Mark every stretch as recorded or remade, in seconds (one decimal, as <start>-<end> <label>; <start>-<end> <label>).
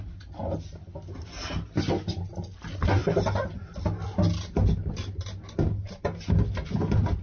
0.0-7.2 recorded